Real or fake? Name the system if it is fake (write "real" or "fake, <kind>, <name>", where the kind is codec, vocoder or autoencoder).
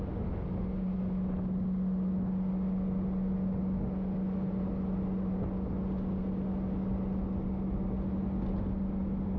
real